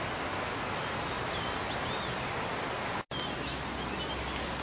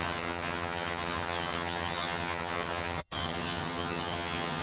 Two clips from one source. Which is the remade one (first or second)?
second